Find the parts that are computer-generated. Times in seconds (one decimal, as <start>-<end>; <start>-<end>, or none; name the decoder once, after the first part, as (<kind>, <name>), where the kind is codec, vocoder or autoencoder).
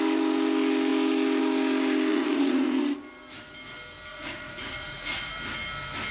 2.1-2.8 (vocoder, Vocos); 4.1-5.3